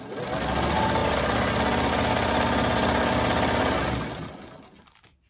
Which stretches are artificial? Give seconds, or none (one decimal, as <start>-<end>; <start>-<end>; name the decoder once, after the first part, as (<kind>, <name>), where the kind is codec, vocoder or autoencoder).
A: none